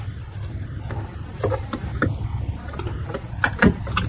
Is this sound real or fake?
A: real